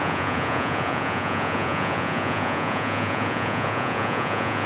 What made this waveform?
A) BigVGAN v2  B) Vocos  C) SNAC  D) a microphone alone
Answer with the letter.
B